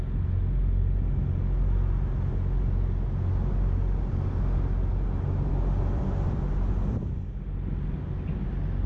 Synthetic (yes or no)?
no